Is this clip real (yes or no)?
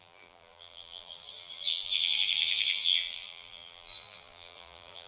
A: no